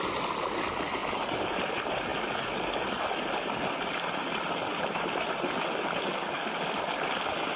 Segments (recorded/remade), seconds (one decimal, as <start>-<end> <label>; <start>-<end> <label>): 0.0-1.0 remade; 1.0-1.5 recorded; 1.5-2.1 remade; 2.1-5.7 recorded; 5.7-7.6 remade